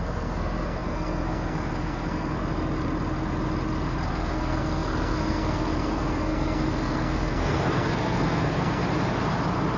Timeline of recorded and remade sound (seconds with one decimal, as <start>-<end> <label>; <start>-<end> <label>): 0.0-2.4 remade; 2.4-4.1 recorded; 4.1-8.8 remade; 8.8-9.8 recorded